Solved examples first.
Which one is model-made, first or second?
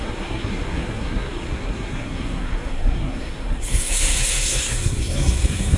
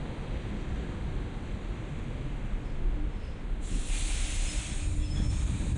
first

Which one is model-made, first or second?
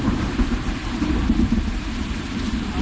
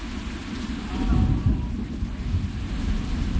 first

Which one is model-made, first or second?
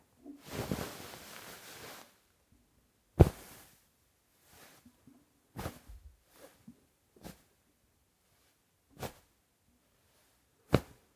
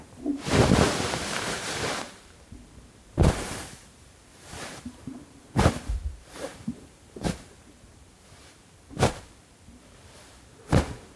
second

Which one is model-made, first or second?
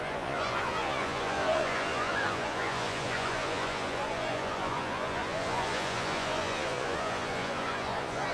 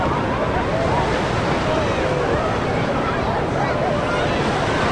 first